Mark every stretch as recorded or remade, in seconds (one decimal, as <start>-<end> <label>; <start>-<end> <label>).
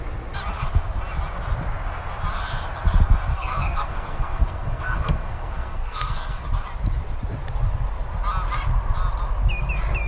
0.0-3.3 recorded; 3.3-6.5 remade; 6.5-10.1 recorded